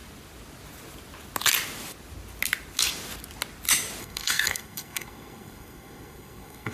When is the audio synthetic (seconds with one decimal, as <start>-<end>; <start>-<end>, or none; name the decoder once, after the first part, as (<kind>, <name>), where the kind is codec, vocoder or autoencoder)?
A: 4.0-6.7 (codec, SNAC)